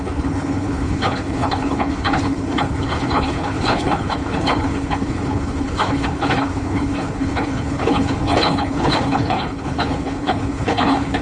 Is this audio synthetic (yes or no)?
yes